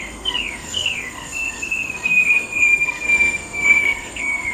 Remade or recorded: remade